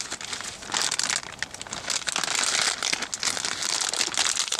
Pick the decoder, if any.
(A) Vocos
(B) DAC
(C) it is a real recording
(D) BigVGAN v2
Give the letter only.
C